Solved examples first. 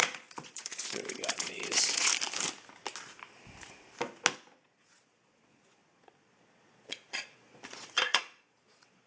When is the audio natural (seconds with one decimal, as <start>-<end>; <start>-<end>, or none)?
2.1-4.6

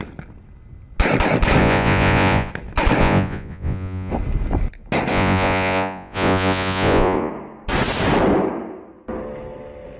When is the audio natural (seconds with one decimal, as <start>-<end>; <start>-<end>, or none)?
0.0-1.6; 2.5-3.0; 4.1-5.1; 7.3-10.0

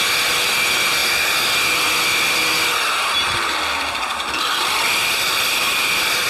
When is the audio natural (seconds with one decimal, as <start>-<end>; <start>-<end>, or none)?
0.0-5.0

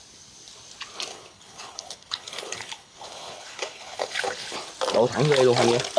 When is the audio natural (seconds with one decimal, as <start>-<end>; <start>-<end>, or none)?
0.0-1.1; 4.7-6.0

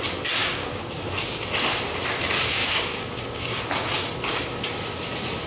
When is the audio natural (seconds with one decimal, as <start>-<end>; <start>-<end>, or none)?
0.0-0.4; 1.1-2.6; 3.6-5.5

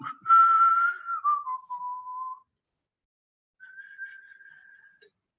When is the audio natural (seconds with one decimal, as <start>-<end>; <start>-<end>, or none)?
0.0-5.4

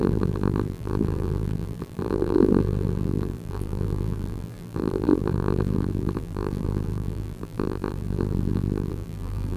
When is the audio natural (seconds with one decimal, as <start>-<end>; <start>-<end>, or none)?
none